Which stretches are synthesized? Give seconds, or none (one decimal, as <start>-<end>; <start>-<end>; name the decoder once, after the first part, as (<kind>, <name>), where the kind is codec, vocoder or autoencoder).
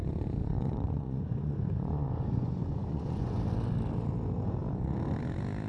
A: 0.4-3.4 (vocoder, Vocos)